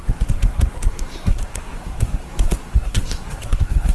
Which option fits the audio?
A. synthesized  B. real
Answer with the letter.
A